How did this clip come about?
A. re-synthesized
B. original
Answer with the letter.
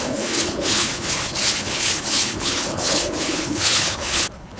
A